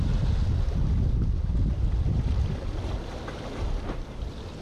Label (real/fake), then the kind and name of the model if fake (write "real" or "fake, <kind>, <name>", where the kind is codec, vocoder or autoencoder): real